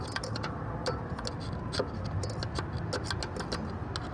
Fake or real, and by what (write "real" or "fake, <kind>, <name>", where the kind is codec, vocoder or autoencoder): real